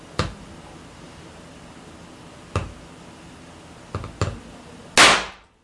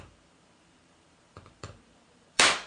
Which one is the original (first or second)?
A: first